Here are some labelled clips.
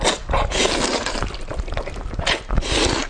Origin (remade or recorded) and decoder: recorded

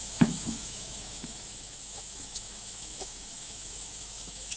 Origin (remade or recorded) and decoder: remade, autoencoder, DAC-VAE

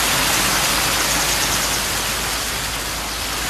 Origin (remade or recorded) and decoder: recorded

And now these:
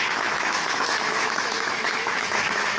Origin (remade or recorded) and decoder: remade, autoencoder, DAC-VAE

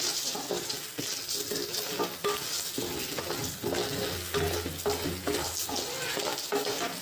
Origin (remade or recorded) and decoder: recorded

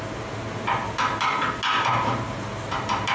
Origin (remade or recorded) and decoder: recorded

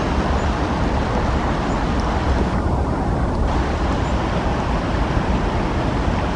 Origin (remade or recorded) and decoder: recorded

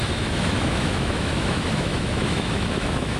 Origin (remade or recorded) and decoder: remade, autoencoder, DAC-VAE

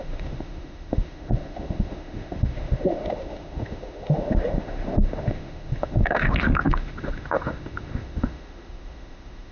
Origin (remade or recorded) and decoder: remade, autoencoder, DAC-VAE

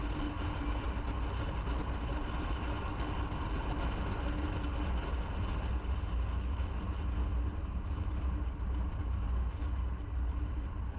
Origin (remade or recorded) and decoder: recorded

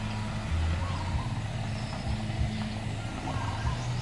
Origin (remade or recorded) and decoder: recorded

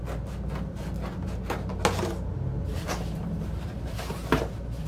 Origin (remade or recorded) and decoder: recorded